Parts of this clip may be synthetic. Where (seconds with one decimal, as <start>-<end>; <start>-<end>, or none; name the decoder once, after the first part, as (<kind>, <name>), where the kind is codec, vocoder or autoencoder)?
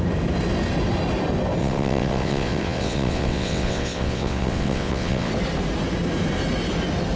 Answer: 1.6-5.3 (vocoder, WaveNeXt)